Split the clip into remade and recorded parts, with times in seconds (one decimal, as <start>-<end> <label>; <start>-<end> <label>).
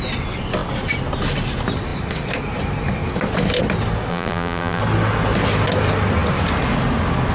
0.0-4.1 recorded; 4.1-4.8 remade; 4.8-7.3 recorded